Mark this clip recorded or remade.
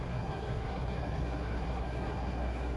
remade